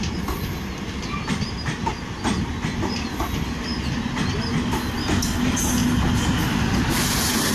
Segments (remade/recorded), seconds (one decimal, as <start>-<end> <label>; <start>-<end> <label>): 0.0-7.5 recorded